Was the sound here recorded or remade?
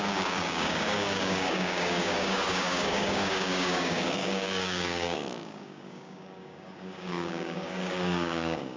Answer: remade